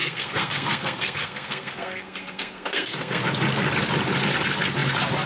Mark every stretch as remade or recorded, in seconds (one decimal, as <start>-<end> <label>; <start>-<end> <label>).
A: 0.0-3.2 remade; 3.2-5.3 recorded